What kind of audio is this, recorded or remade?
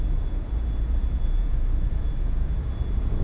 remade